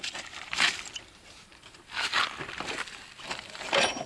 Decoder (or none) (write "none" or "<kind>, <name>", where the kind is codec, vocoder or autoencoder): none